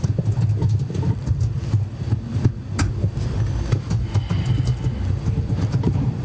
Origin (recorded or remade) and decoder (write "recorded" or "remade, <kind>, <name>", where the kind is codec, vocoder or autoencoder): remade, vocoder, BigVGAN v2